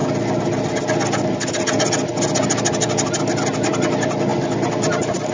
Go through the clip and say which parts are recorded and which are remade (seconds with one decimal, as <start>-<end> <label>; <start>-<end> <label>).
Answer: 0.0-5.3 recorded